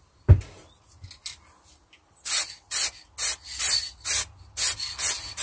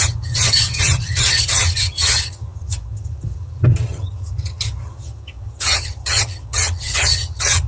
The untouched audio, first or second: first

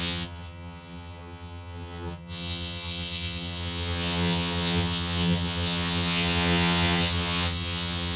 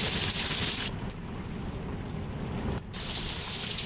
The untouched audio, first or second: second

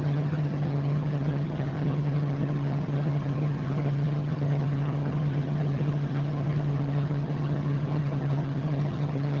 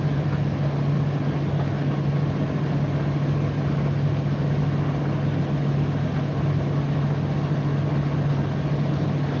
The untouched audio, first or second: second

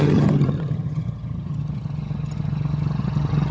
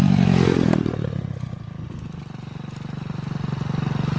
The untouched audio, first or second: second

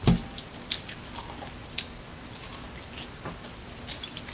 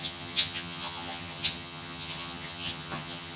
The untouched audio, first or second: first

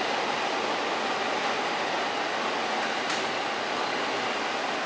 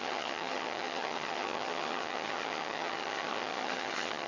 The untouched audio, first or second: first